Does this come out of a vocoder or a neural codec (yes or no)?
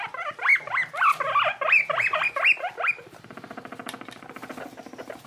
no